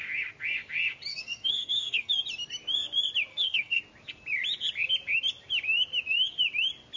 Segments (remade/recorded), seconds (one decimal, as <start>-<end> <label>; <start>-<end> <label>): 0.0-1.1 recorded; 1.1-2.1 remade; 2.1-3.3 recorded; 3.3-3.8 remade; 3.8-7.0 recorded